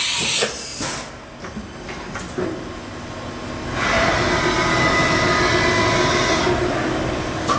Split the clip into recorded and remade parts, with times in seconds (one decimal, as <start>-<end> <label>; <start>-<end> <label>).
0.0-7.6 recorded